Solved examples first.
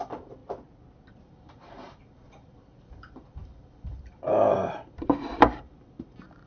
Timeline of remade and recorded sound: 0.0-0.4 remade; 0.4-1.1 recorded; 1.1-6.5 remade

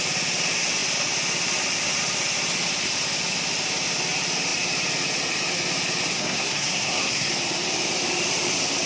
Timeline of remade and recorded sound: 0.0-6.1 recorded; 6.1-7.3 remade; 7.3-8.9 recorded

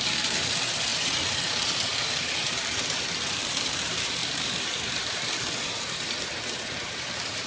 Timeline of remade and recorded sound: 0.0-7.5 remade

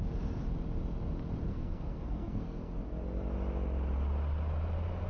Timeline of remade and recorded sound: 0.0-1.5 recorded; 1.5-2.7 remade; 2.7-5.1 recorded

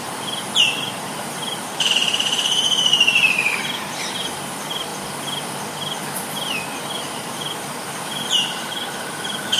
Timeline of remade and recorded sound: 0.0-4.9 remade; 4.9-7.0 recorded; 7.0-9.6 remade

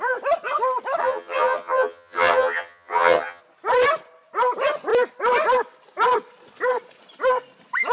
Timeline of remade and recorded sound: 0.0-1.0 recorded; 1.0-3.4 remade; 3.4-7.9 recorded

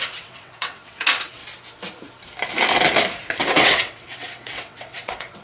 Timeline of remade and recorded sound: 0.0-1.4 remade; 1.4-3.4 recorded; 3.4-5.4 remade

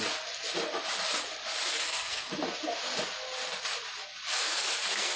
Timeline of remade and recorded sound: 0.0-1.7 recorded; 1.7-2.3 remade; 2.3-4.3 recorded; 4.3-5.2 remade